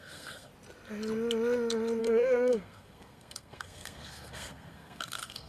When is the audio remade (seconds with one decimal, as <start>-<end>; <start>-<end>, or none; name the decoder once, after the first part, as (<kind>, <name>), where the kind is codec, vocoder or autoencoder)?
0.0-0.5 (codec, SNAC); 2.0-5.5